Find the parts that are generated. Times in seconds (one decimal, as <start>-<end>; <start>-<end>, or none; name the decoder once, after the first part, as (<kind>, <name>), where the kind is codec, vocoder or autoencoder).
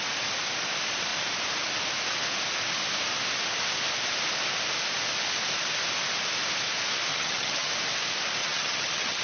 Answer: 7.1-7.7 (vocoder, HiFi-GAN); 8.4-9.2